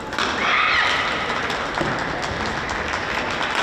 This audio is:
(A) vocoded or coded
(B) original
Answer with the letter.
B